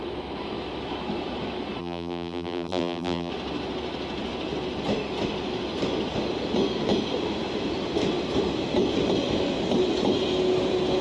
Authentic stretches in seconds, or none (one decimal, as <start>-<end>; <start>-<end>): 0.0-1.8; 3.3-11.0